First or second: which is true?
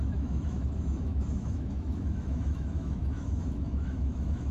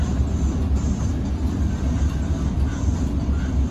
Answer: second